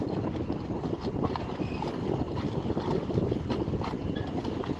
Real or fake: fake